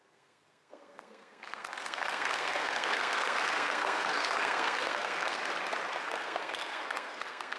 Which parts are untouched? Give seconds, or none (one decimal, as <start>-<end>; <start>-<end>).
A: 5.4-6.0